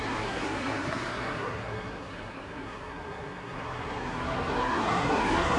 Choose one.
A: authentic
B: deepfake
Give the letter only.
B